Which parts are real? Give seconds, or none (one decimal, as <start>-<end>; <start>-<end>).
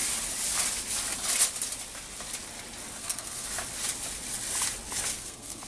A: 0.0-3.0; 3.5-5.1